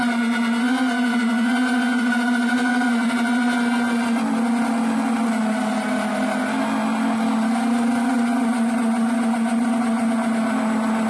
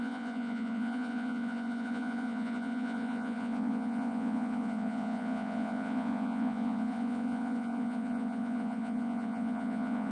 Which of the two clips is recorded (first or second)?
first